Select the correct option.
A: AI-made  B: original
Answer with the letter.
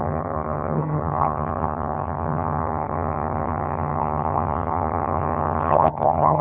A